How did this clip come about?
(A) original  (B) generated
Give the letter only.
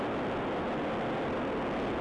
A